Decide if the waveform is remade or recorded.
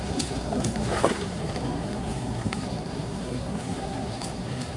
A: remade